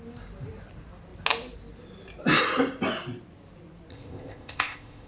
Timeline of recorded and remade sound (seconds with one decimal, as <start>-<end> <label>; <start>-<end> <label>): 0.0-3.9 recorded; 3.9-5.1 remade